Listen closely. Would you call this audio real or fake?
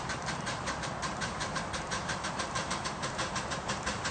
fake